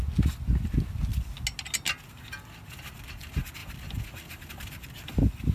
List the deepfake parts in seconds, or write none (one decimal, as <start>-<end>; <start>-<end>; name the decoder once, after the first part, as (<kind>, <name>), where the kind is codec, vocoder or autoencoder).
none